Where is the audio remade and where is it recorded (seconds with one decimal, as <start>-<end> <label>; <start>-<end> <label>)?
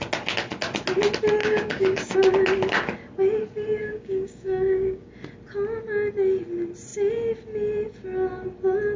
0.0-1.4 recorded; 1.4-2.3 remade; 2.3-3.8 recorded; 3.8-5.1 remade; 5.1-9.0 recorded